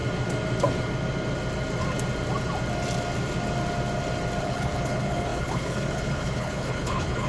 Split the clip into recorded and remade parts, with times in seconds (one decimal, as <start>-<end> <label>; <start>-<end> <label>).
0.0-4.4 recorded; 4.4-7.3 remade